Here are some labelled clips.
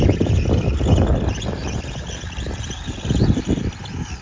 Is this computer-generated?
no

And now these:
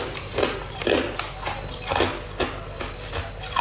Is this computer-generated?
no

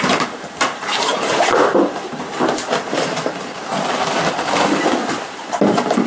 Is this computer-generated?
yes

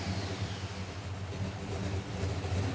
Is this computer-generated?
no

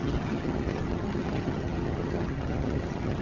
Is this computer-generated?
yes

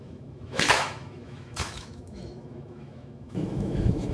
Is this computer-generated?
yes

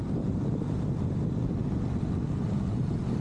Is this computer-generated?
no